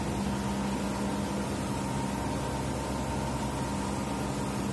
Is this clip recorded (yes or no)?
yes